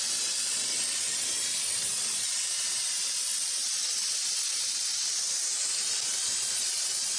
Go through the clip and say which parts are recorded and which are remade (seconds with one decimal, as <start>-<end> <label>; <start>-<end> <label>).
0.0-7.2 recorded